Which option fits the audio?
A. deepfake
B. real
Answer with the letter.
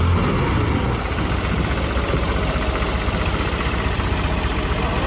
B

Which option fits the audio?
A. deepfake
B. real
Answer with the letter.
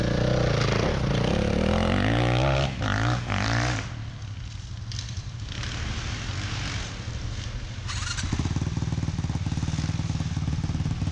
B